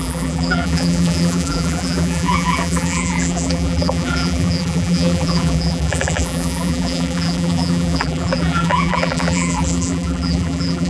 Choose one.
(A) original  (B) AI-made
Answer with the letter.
B